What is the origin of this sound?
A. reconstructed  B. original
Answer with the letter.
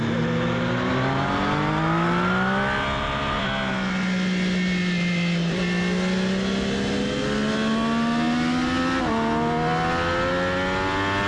B